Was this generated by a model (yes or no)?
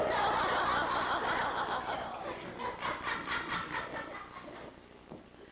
no